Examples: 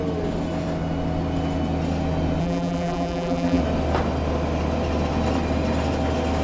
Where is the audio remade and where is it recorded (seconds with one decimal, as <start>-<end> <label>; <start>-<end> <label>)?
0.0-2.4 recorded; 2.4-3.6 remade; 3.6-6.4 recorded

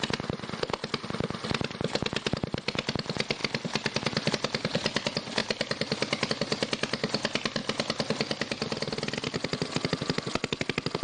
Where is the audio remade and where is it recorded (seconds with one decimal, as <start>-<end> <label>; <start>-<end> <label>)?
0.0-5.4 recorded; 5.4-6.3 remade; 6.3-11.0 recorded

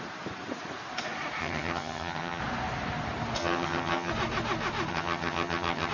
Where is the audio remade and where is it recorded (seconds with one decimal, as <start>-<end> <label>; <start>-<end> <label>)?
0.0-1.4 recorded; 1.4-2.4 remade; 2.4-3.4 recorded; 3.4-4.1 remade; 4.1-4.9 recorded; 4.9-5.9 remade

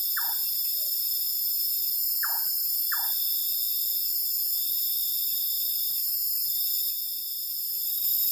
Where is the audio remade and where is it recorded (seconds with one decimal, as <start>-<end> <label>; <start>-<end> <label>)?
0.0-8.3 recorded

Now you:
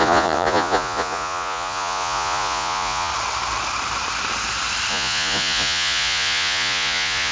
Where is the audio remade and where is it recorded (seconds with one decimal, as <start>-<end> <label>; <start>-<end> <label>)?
0.0-3.1 remade; 3.1-4.9 recorded; 4.9-7.3 remade

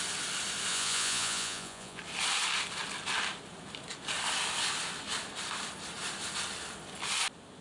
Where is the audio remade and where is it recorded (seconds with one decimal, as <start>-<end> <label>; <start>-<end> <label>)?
0.0-0.7 recorded; 0.7-2.0 remade; 2.0-7.6 recorded